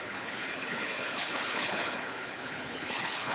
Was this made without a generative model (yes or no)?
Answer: no